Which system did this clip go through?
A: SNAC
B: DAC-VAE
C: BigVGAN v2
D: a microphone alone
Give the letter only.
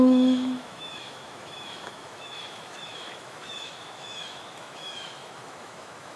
B